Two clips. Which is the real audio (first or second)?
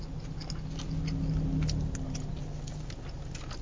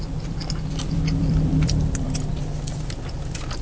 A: first